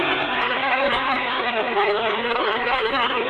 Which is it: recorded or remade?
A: remade